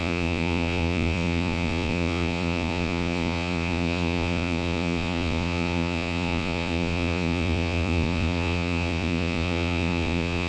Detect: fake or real fake